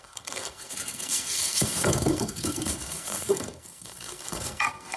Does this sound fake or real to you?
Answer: fake